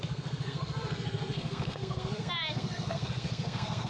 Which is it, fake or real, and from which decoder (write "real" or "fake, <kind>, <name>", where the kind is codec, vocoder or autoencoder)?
fake, codec, SNAC